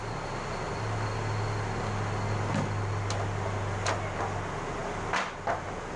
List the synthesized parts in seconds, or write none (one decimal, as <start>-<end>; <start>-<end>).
none